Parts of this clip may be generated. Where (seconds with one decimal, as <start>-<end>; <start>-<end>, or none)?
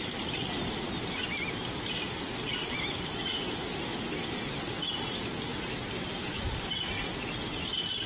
2.6-3.3; 5.5-6.5